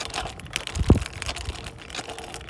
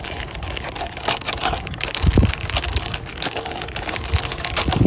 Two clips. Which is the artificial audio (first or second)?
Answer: second